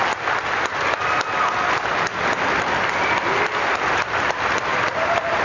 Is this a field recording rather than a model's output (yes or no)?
yes